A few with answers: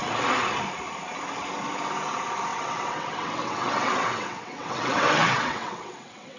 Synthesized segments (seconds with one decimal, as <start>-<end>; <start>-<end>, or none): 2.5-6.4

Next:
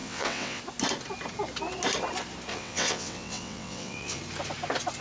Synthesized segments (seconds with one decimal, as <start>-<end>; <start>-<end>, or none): 0.0-0.6; 2.5-4.2

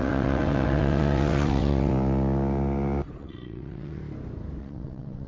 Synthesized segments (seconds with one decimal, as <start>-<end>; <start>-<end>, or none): 0.0-1.9; 3.2-4.0; 4.6-5.3